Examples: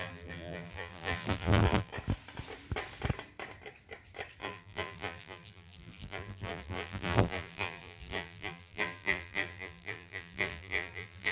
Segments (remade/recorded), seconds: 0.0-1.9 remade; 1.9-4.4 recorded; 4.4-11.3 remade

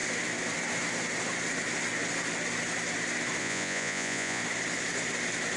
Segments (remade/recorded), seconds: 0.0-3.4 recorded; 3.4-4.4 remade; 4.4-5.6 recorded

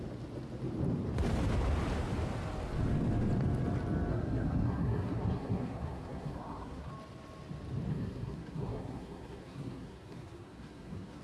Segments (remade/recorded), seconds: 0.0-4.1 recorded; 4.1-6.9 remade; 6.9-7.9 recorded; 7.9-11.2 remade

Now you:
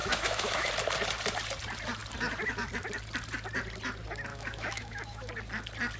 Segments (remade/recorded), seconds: 0.0-0.7 remade; 0.7-4.3 recorded; 4.3-5.3 remade; 5.3-6.0 recorded

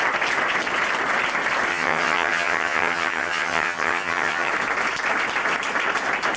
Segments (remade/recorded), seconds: 0.0-1.7 recorded; 1.7-4.5 remade; 4.5-6.4 recorded